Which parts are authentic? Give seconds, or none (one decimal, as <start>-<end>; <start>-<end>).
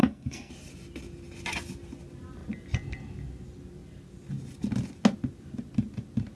0.5-6.4